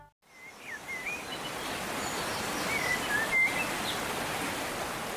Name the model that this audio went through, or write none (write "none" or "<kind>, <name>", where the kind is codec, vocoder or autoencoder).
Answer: none